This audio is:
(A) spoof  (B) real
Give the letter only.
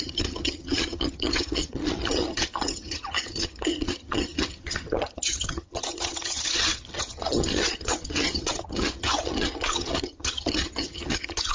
A